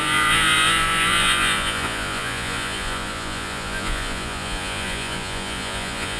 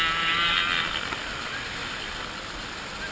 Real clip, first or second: second